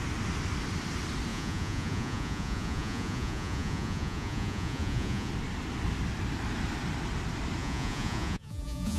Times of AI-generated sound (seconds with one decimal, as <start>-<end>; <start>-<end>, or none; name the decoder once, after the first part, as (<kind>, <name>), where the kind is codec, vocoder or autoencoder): 1.3-5.3 (vocoder, Vocos); 7.6-9.0